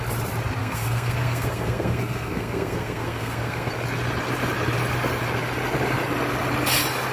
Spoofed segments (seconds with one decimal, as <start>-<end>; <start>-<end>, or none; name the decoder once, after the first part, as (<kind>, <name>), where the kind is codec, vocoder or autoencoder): 0.6-3.7 (codec, SNAC)